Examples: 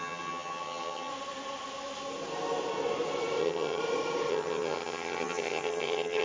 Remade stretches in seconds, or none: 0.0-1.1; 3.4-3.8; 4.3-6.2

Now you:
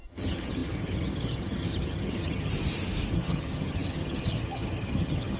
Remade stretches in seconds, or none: 0.0-2.5; 3.1-5.4

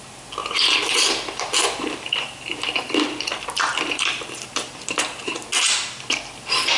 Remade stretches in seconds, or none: 0.4-4.5

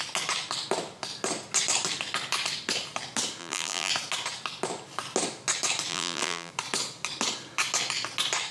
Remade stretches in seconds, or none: 3.4-3.9; 5.9-6.5

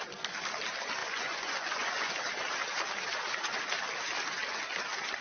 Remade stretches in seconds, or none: 1.0-2.1

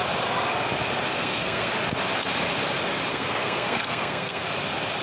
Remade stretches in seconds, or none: 1.1-1.7; 3.1-4.4

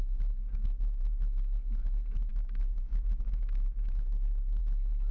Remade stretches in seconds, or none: 0.4-1.2; 2.3-4.6

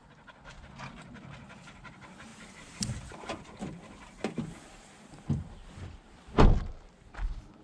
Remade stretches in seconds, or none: 0.0-7.6